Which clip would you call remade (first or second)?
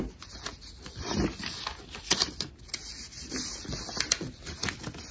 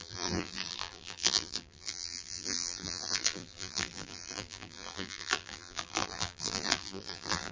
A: second